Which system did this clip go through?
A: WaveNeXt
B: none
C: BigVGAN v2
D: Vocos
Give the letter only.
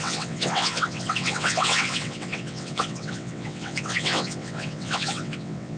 A